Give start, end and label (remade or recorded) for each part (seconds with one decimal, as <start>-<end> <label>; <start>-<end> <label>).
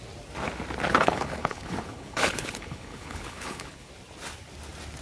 0.0-0.9 recorded; 0.9-3.9 remade; 3.9-5.0 recorded